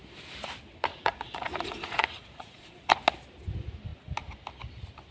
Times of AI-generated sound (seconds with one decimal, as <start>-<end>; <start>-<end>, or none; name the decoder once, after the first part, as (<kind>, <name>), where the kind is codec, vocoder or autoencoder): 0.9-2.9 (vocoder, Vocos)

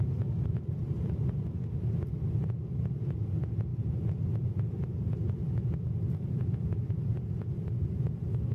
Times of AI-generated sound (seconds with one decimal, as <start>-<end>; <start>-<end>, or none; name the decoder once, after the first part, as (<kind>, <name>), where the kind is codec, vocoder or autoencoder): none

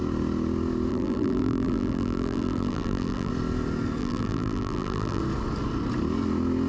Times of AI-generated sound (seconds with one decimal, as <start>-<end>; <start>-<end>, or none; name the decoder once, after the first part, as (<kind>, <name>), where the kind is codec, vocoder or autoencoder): 0.9-3.3 (vocoder, BigVGAN v2); 4.0-5.2